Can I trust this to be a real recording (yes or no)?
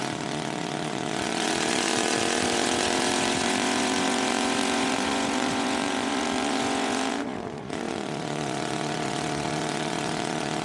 no